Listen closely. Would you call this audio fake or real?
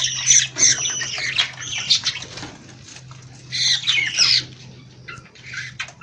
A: real